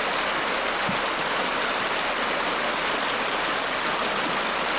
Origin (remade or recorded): recorded